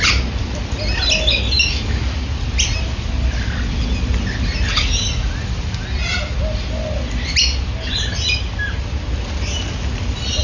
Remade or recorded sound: recorded